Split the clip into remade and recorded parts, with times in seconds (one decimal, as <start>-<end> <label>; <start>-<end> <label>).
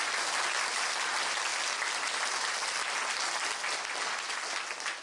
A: 0.0-5.0 recorded